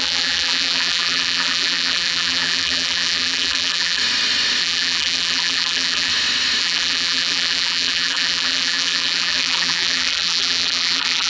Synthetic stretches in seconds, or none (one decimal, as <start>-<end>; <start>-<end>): 0.0-4.0; 4.6-6.1; 6.6-11.3

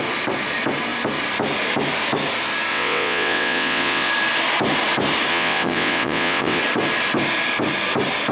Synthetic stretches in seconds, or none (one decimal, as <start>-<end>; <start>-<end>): 2.7-4.1; 5.3-6.6

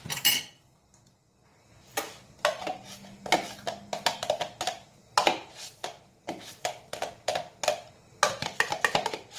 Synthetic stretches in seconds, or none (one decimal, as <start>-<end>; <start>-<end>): 5.4-6.2

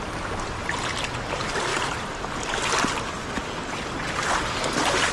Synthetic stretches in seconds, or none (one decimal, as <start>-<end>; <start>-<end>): none

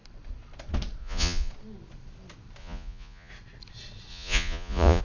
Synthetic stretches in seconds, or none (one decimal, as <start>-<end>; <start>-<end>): 1.0-1.5; 2.6-3.3; 4.1-5.0

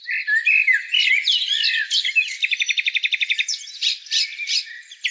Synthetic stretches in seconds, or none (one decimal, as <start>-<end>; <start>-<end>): none

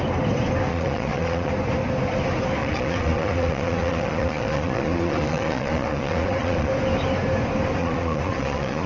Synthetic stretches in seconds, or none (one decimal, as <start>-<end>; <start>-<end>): 0.7-1.5; 2.6-6.7; 7.8-8.9